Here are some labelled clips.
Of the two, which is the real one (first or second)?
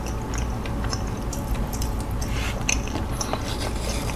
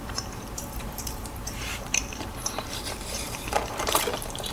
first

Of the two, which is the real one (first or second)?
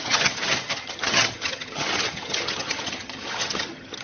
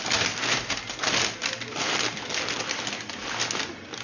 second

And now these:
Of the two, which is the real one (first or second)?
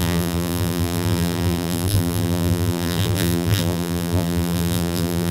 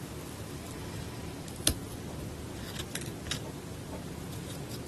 second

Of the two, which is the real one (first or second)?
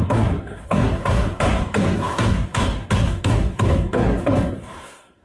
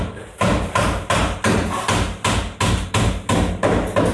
second